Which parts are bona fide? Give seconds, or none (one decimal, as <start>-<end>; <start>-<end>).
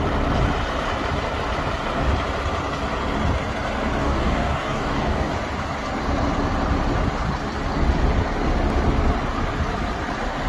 0.0-4.0; 5.3-10.5